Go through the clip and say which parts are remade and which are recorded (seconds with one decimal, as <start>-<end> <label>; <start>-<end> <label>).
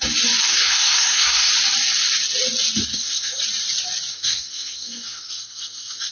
0.0-0.5 recorded; 0.5-1.5 remade; 1.5-2.9 recorded; 2.9-3.4 remade; 3.4-4.1 recorded; 4.1-6.1 remade